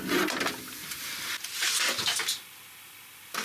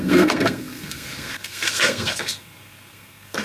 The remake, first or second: second